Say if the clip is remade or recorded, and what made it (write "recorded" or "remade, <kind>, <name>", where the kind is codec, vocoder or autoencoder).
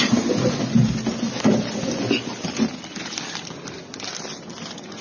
recorded